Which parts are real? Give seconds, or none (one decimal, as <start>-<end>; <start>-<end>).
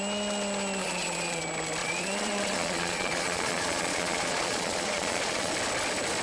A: 0.0-0.8; 1.4-1.8; 5.5-6.2